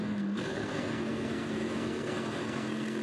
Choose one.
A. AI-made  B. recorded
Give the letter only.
A